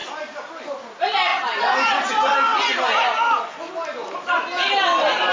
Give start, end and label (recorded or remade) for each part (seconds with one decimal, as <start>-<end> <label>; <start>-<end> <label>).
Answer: 0.0-5.3 recorded